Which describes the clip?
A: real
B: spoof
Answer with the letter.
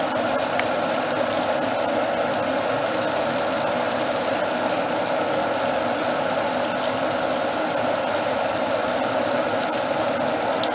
A